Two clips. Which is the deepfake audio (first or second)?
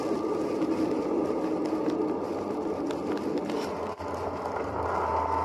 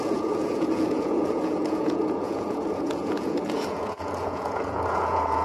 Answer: second